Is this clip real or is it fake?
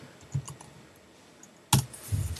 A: real